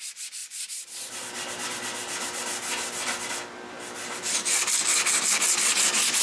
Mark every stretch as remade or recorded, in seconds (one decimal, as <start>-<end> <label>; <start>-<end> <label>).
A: 0.0-0.4 recorded; 0.4-1.1 remade; 1.1-6.2 recorded